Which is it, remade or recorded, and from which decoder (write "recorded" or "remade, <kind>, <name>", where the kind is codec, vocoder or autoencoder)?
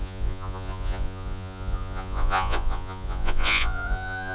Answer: remade, vocoder, Vocos